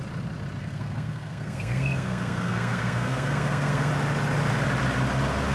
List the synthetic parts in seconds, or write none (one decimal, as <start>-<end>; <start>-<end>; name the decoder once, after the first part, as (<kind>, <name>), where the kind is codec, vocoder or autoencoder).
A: 0.6-3.9 (codec, SNAC)